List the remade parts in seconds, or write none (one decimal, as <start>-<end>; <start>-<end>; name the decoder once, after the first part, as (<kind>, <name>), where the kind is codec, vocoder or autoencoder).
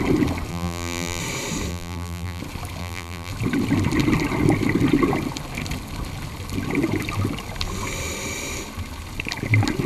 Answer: 0.5-1.2 (vocoder, BigVGAN v2); 1.7-2.4; 2.8-3.3